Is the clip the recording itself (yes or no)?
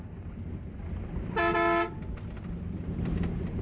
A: yes